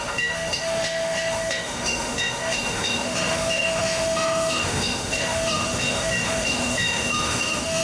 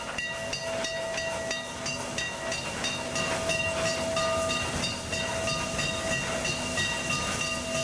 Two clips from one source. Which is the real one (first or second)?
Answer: second